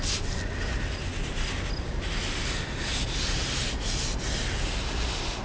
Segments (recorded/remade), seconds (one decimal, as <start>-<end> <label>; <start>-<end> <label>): 0.0-5.4 recorded